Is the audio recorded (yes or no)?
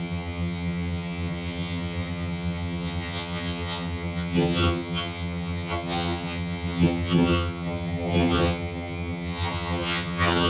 no